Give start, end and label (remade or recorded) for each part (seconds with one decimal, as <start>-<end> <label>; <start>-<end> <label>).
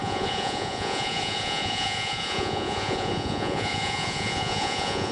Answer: 0.0-5.1 remade